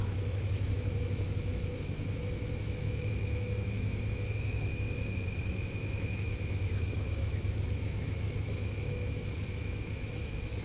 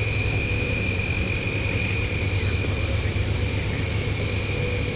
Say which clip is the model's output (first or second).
first